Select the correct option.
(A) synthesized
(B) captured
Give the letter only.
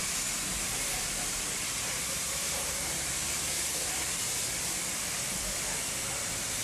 A